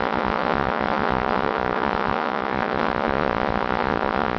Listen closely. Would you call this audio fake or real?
fake